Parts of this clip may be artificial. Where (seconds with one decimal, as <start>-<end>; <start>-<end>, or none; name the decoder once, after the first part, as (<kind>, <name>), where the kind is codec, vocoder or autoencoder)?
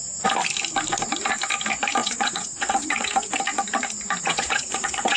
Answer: 2.0-3.4 (vocoder, WaveNeXt); 4.2-5.2